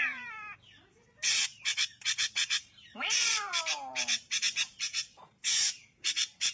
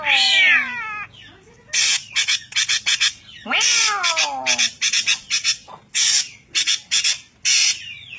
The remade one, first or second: first